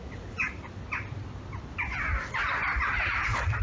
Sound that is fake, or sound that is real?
real